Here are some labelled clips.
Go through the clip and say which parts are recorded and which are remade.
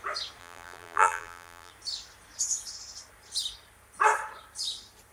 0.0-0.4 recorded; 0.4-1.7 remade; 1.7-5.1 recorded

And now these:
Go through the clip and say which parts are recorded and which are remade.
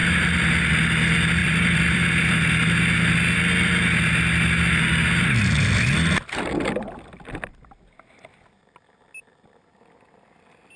0.0-1.4 recorded; 1.4-2.4 remade; 2.4-10.8 recorded